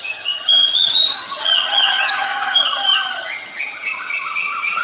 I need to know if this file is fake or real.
fake